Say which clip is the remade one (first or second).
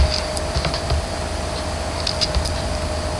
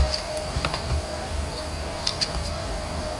second